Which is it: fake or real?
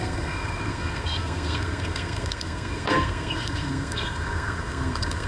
fake